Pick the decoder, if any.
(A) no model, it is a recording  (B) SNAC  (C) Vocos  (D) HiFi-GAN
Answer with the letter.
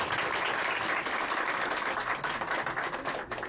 A